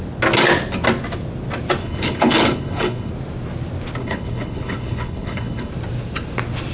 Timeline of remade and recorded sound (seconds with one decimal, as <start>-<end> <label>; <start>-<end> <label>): 0.0-1.8 recorded; 1.8-3.1 remade; 3.1-4.0 recorded; 4.0-5.7 remade; 5.7-6.7 recorded